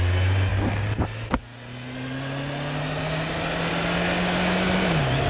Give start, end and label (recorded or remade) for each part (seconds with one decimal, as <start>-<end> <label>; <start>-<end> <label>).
0.0-5.3 recorded